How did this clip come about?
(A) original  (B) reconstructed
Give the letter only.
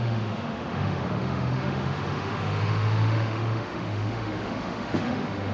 B